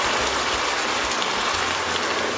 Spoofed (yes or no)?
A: no